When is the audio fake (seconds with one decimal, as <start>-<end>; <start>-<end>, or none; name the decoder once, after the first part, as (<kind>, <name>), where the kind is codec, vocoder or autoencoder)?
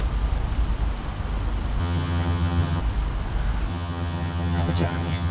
1.8-2.8 (vocoder, HiFi-GAN); 3.7-5.3